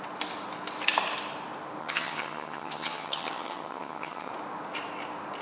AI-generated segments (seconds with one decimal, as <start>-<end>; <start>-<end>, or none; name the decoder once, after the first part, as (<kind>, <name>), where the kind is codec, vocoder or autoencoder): 1.8-4.3 (vocoder, HiFi-GAN)